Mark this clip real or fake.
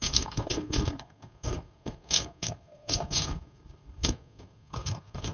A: fake